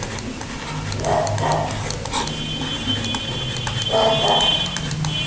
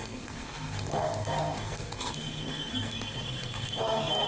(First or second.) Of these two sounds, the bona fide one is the first